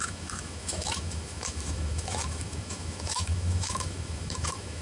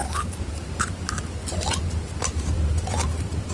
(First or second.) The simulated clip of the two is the first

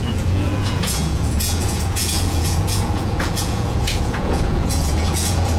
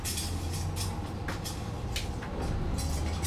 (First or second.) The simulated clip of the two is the first